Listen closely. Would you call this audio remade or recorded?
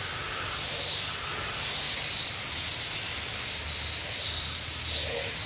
recorded